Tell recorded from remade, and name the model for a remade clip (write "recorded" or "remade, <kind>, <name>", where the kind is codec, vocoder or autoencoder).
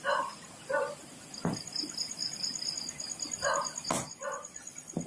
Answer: recorded